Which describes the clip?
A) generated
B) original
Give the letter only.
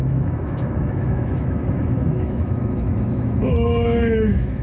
A